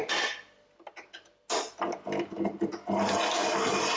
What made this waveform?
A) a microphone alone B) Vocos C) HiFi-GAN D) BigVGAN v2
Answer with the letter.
A